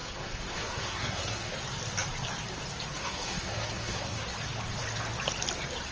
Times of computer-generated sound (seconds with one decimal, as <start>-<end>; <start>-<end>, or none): 0.0-1.5; 3.0-4.2